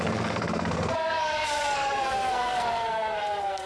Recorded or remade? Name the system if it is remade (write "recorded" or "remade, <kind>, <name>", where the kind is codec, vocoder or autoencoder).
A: remade, codec, SNAC